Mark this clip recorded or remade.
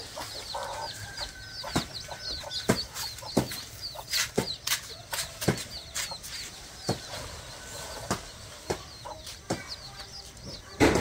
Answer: recorded